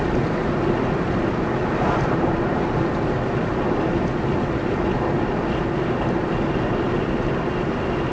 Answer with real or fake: real